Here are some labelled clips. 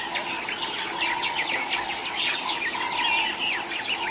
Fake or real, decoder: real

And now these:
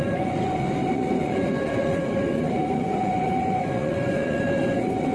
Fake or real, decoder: fake, vocoder, Vocos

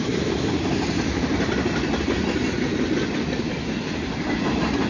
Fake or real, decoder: real